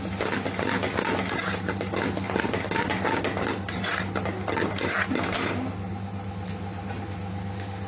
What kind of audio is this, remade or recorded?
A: recorded